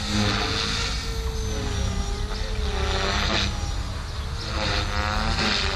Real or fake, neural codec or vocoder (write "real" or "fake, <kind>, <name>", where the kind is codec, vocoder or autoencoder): real